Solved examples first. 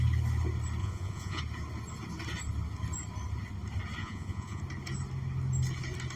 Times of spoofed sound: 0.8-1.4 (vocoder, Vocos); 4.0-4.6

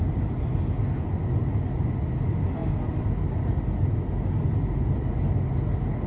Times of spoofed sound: none

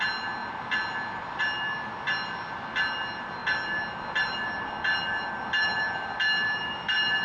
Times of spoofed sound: none

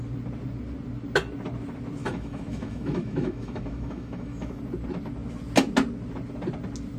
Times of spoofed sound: 2.0-4.6 (autoencoder, DAC-VAE)

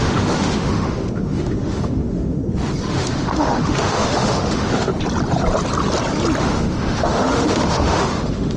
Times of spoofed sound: 0.0-2.4 (autoencoder, DAC-VAE); 2.9-4.9; 6.4-8.6